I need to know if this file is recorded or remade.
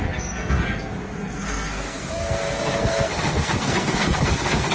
remade